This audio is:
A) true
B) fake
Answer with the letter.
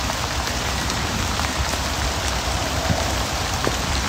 B